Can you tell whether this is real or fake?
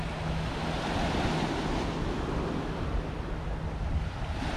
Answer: real